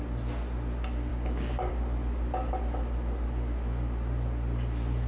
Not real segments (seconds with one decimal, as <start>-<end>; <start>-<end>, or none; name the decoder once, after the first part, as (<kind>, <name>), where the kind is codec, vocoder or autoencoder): 1.1-1.7 (codec, DAC)